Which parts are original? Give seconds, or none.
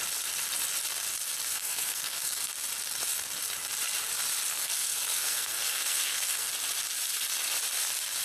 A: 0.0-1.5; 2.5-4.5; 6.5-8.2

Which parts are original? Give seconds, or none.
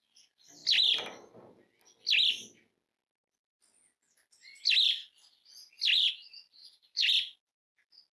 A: 0.0-6.6; 7.1-8.1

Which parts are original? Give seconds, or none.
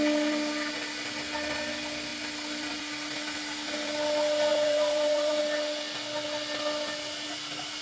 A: 0.0-4.5; 5.4-7.8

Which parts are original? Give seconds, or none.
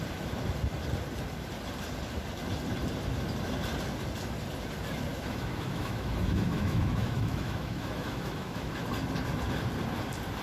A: 0.0-5.1; 8.7-10.4